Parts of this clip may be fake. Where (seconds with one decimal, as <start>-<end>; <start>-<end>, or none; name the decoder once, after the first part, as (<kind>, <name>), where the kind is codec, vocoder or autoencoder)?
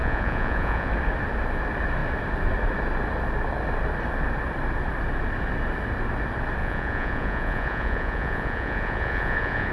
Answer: 0.0-0.9 (vocoder, Vocos); 6.6-9.7